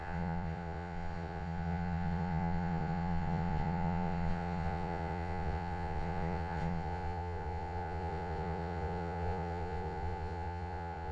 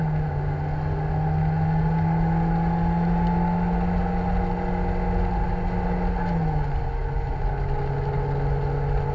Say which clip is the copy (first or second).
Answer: first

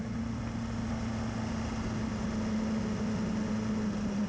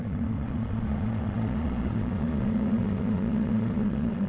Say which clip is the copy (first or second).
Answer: second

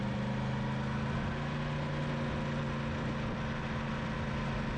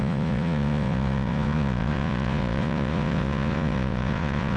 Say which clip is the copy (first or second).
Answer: second